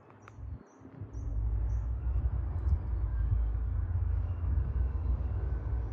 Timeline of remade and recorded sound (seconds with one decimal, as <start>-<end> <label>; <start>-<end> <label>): 0.0-1.3 recorded; 1.3-2.2 remade; 2.2-3.1 recorded; 3.1-5.9 remade